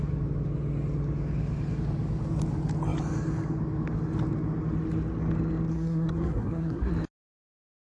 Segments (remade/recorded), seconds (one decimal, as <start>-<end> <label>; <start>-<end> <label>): 0.0-5.7 recorded; 5.7-6.9 remade; 6.9-8.0 recorded